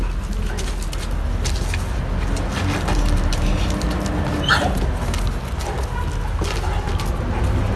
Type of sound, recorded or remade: recorded